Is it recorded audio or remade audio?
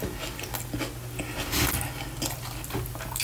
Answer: recorded